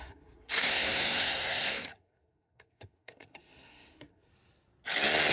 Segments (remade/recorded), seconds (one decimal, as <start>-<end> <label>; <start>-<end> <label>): 0.0-4.3 remade; 4.3-5.3 recorded